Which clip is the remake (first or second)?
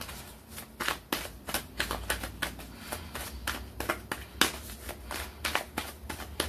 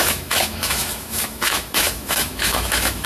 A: second